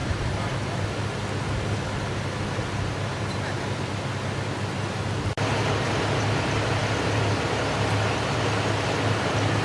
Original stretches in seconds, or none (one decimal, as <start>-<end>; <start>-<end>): 0.0-9.6